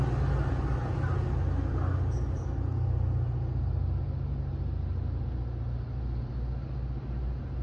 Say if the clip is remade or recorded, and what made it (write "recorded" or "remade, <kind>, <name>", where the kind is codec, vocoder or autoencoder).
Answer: recorded